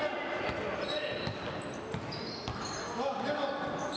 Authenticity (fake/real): real